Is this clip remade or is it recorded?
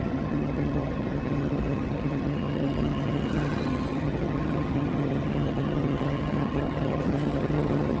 remade